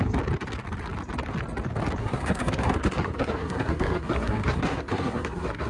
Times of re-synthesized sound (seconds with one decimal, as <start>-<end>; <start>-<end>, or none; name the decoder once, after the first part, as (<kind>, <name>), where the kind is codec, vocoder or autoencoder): 2.0-5.7 (codec, SNAC)

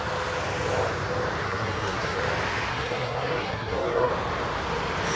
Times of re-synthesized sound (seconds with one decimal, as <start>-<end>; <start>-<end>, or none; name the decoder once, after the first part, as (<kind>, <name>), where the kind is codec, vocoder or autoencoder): 1.4-2.2 (codec, SNAC); 2.7-4.1